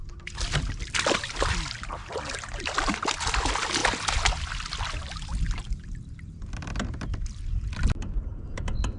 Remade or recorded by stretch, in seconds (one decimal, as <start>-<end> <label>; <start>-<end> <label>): 0.0-1.9 remade; 1.9-9.0 recorded